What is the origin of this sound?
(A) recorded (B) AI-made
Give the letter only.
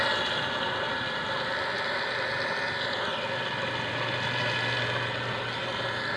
A